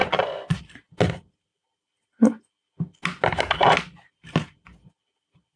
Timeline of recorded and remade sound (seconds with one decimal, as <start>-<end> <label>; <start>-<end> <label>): 0.0-0.6 remade; 0.6-5.6 recorded